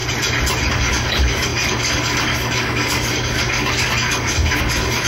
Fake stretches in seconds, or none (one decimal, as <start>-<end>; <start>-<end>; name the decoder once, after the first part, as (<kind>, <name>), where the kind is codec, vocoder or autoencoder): 0.7-5.1 (codec, DAC)

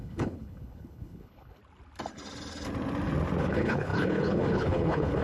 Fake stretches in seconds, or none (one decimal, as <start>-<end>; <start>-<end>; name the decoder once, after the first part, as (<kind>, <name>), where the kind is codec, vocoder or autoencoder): 0.0-1.6 (codec, HILCodec); 3.4-5.2

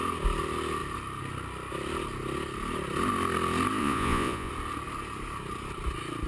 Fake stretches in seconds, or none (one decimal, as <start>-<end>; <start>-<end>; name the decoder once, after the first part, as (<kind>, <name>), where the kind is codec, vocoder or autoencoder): 3.8-4.5 (vocoder, Vocos)

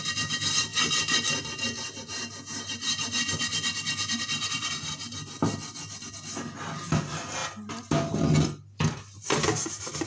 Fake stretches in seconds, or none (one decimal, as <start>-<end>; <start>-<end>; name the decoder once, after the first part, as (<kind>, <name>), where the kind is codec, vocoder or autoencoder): none

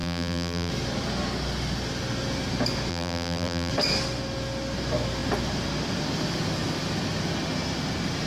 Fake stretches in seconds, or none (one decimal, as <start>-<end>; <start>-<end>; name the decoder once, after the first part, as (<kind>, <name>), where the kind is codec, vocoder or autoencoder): 0.0-0.7 (vocoder, BigVGAN v2); 2.9-3.7

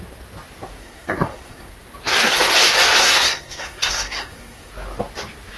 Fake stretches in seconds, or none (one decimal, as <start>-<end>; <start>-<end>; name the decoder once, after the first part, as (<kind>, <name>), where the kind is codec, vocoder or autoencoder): 0.8-1.7 (codec, SNAC); 3.0-4.7

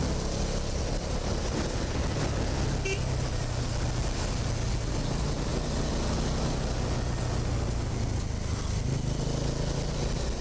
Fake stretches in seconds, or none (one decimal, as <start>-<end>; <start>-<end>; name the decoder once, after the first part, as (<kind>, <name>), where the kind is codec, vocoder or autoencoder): none

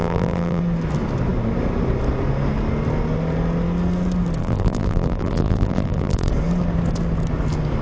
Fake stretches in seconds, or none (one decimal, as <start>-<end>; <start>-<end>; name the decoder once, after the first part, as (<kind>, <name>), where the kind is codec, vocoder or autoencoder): 0.0-0.6 (vocoder, BigVGAN v2); 4.4-6.3